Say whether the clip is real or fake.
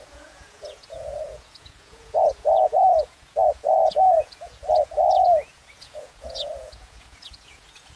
fake